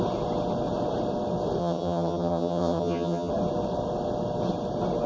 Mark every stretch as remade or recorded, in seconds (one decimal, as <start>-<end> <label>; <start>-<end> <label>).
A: 0.0-1.6 recorded; 1.6-3.3 remade; 3.3-5.1 recorded